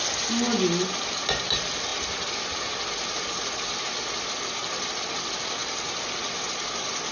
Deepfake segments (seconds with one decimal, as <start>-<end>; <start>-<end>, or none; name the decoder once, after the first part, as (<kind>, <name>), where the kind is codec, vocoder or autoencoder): none